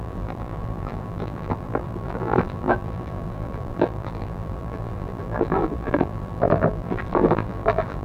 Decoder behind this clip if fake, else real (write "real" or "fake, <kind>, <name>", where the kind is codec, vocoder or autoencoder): fake, vocoder, BigVGAN v2